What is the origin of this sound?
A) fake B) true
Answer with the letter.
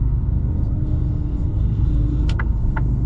A